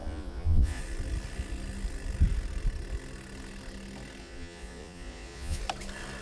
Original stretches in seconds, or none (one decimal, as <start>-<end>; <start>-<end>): 0.8-4.2; 5.6-6.2